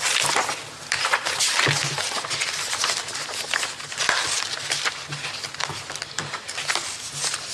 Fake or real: real